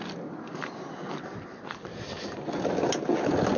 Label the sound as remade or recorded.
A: recorded